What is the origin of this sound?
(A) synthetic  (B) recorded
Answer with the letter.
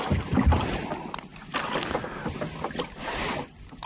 B